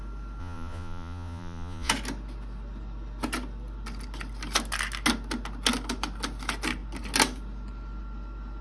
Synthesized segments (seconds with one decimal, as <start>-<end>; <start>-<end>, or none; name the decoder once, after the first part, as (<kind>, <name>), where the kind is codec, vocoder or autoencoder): 0.4-1.9 (vocoder, Vocos)